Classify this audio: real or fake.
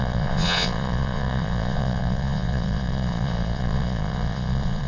fake